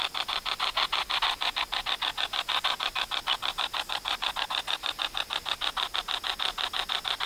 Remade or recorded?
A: recorded